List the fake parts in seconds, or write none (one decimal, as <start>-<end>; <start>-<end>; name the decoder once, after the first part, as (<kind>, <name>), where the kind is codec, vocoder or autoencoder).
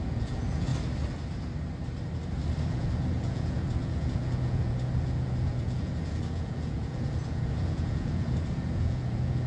0.0-0.7 (vocoder, Vocos); 2.7-9.5